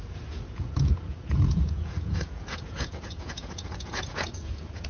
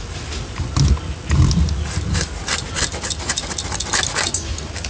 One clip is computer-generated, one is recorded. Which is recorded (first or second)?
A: second